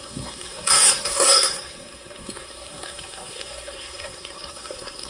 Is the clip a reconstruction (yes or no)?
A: yes